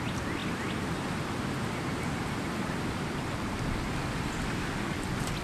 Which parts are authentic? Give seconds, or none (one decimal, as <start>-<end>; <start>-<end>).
0.0-5.4